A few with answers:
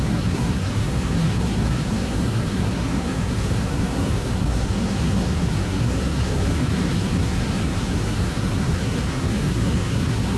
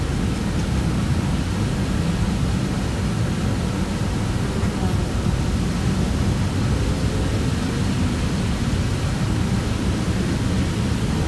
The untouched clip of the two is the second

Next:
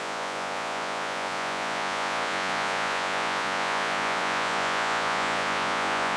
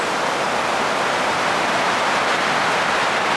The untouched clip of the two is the second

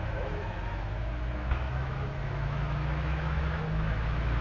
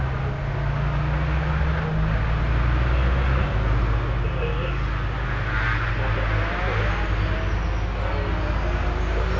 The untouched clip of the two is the second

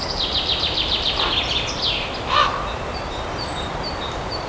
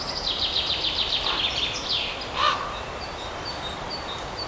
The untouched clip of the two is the first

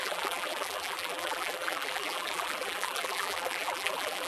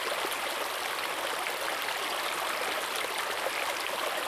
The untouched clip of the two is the second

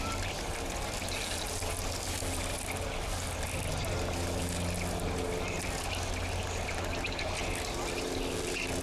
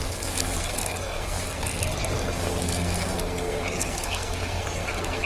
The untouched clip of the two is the first